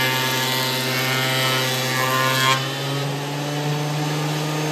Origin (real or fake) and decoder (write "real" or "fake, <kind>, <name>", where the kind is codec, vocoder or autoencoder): real